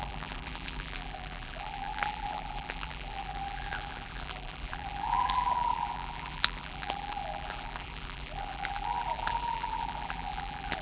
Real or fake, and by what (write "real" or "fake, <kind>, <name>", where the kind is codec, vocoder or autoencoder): fake, vocoder, BigVGAN v2